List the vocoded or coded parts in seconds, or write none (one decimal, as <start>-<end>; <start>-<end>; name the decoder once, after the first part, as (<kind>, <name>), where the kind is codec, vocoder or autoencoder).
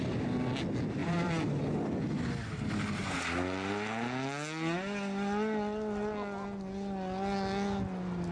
1.0-1.6 (vocoder, BigVGAN v2)